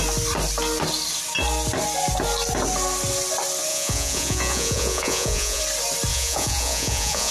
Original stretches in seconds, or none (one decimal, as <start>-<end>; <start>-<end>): 0.0-3.7; 5.6-6.1